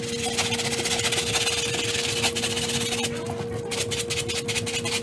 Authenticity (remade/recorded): recorded